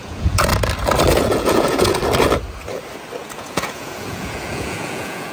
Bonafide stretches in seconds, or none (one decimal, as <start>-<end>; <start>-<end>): 0.5-1.1; 2.0-3.2